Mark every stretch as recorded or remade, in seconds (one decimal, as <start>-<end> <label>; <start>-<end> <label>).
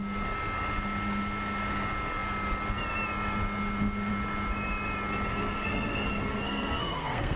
0.0-5.3 recorded; 5.3-7.4 remade